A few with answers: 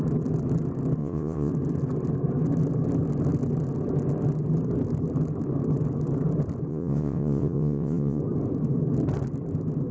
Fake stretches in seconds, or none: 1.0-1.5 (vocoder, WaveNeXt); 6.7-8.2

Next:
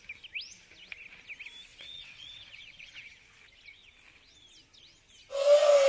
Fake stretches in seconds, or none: 1.7-3.0 (vocoder, WaveNeXt)

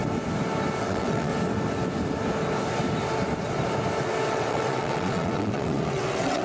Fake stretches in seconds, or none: 0.8-1.3 (vocoder, WaveNeXt); 4.3-6.4

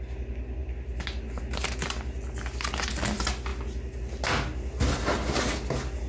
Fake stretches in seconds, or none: none

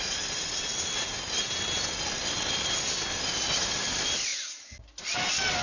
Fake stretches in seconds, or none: none

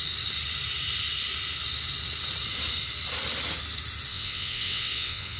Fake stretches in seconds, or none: 4.1-5.4 (vocoder, WaveNeXt)

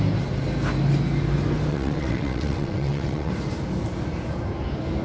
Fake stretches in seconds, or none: 1.7-3.3 (vocoder, WaveNeXt)